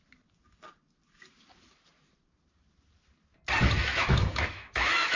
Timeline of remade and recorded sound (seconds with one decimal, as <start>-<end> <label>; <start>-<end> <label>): 0.0-3.9 recorded; 3.9-5.2 remade